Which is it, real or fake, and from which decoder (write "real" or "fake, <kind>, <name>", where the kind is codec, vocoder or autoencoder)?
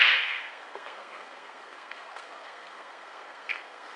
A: fake, codec, SNAC